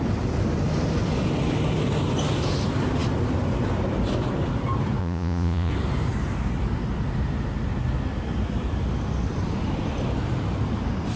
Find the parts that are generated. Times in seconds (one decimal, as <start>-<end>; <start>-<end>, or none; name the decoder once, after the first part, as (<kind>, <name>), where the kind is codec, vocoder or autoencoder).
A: 5.0-5.7 (vocoder, Vocos)